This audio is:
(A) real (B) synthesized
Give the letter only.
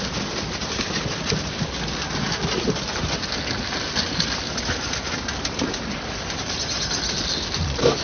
A